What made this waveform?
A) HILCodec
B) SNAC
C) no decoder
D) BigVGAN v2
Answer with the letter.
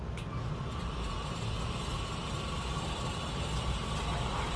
C